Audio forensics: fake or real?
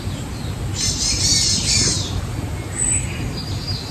real